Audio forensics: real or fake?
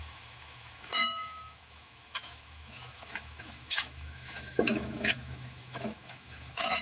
fake